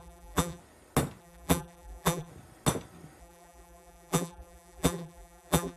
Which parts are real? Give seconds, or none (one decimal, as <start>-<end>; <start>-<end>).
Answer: 0.6-1.2; 2.3-3.2